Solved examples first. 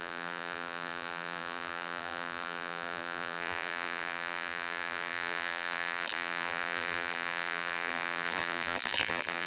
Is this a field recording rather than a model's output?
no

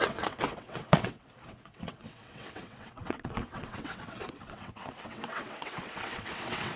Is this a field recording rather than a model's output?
no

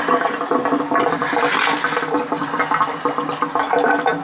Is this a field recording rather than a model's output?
yes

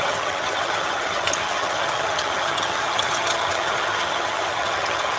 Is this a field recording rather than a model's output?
no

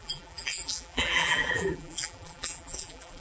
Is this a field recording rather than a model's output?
no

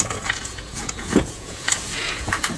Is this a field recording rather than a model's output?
no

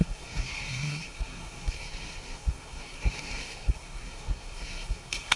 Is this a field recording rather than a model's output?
no